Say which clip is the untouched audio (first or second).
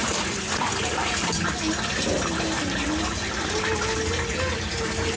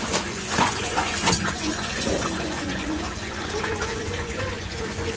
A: first